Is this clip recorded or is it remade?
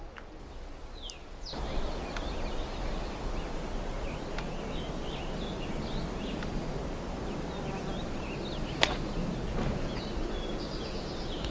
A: recorded